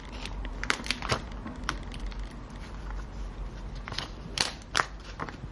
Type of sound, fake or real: fake